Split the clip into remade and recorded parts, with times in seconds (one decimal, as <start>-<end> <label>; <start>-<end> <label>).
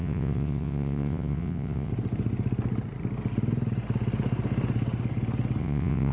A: 0.0-1.9 remade; 1.9-5.6 recorded; 5.6-6.1 remade